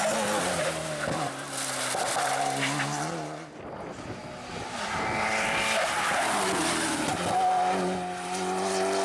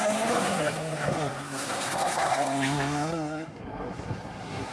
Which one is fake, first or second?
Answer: second